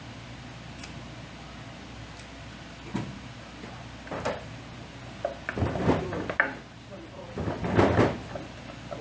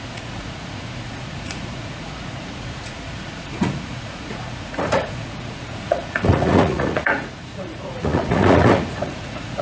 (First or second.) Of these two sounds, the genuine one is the first